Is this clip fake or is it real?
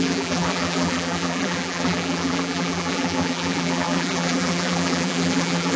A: fake